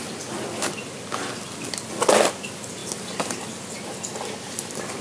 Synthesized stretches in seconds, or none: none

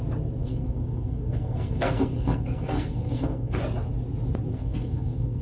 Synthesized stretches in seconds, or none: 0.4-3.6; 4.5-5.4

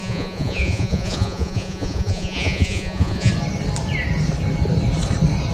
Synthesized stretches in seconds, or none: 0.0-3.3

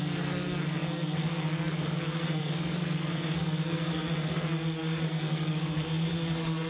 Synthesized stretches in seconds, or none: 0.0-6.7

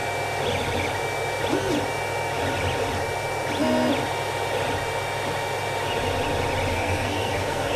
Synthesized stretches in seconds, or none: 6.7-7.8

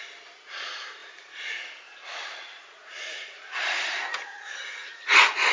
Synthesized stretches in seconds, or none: 1.0-1.5; 2.0-5.5

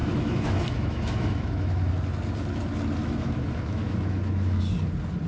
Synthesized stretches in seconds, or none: 0.0-1.9; 3.0-4.6

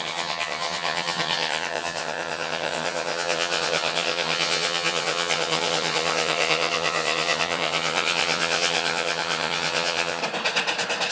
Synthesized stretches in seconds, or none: 0.0-10.2